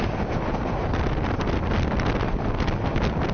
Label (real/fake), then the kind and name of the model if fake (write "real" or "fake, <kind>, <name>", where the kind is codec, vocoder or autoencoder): real